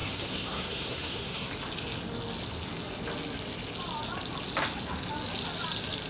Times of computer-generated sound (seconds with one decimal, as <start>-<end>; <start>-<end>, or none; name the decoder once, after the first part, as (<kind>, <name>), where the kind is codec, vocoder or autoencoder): 0.0-1.5 (codec, SNAC)